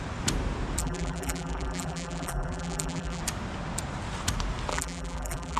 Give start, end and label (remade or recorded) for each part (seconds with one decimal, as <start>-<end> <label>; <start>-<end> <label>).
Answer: 0.0-0.8 recorded; 0.8-3.2 remade; 3.2-4.7 recorded; 4.7-5.6 remade